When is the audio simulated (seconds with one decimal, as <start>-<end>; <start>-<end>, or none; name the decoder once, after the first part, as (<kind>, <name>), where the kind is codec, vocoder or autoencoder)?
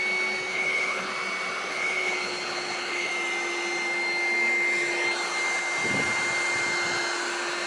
0.5-1.1 (codec, HILCodec); 1.7-3.1